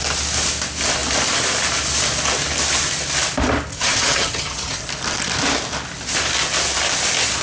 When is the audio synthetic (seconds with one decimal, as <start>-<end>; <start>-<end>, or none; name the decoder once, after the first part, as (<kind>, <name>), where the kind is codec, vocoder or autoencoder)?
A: 3.7-4.8 (vocoder, HiFi-GAN)